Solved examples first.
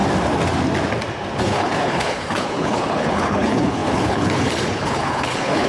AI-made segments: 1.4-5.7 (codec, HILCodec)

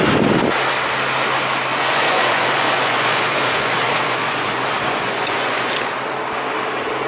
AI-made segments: 1.7-5.9 (vocoder, Vocos)

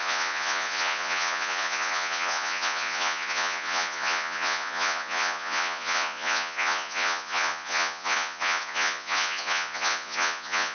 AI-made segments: 0.0-10.7 (vocoder, Vocos)

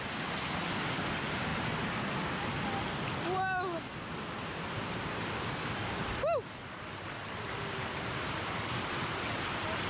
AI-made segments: none

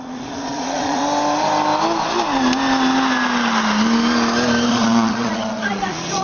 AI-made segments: 0.0-1.0 (vocoder, Vocos); 4.7-6.2